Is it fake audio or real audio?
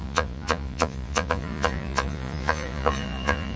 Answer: fake